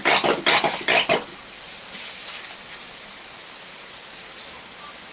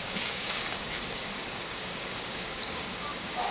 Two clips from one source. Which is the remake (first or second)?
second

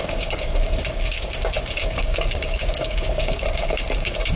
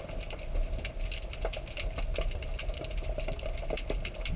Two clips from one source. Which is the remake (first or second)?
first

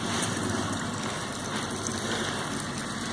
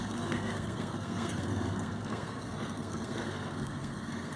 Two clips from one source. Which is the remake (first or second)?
second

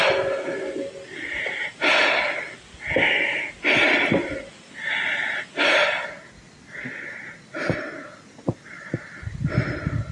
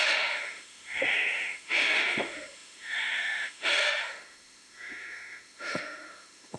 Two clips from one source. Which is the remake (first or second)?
second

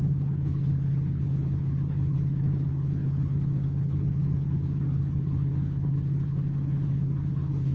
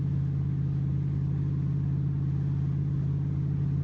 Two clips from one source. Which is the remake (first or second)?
first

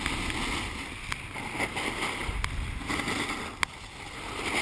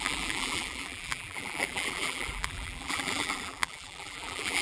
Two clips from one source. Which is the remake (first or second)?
second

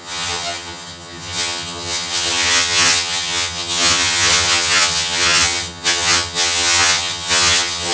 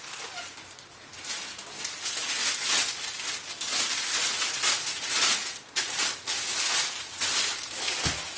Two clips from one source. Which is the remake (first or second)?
first